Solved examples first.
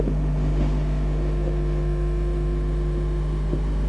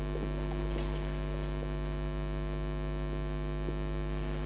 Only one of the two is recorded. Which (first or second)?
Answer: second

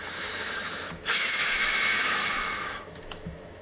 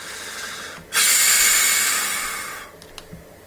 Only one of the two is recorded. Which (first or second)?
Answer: second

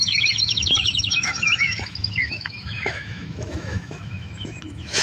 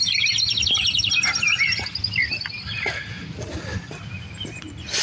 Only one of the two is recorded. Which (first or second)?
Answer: second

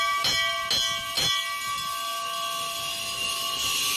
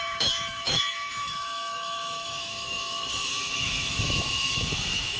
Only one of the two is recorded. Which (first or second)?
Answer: first